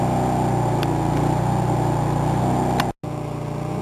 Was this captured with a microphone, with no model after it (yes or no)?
yes